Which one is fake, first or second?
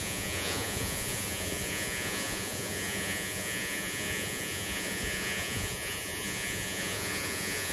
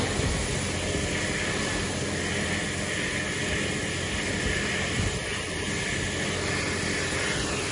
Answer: first